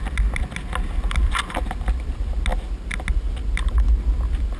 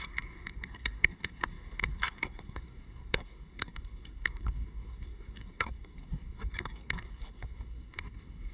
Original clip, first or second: first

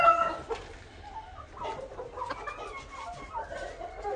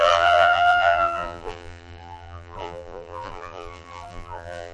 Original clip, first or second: first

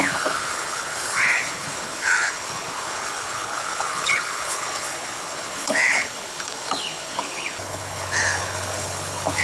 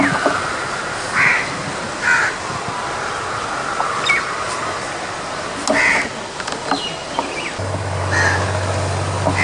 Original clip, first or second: second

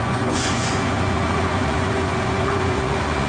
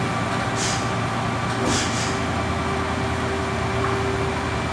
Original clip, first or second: second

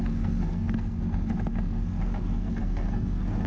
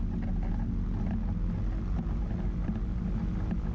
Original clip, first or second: second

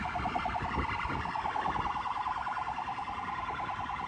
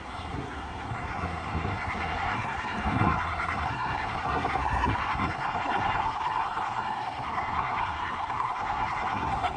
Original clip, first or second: first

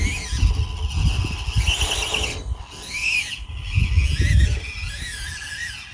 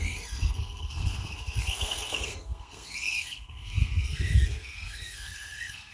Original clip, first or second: first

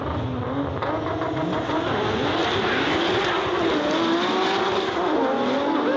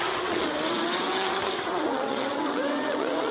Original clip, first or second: first